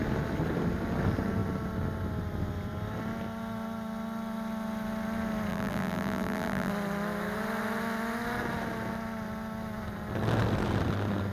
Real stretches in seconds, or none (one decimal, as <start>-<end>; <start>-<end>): 0.0-5.5; 6.7-11.3